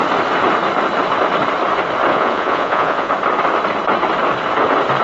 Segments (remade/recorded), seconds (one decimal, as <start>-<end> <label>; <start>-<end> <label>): 0.0-2.1 recorded; 2.1-3.1 remade; 3.1-5.0 recorded